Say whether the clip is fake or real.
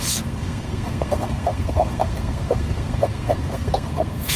fake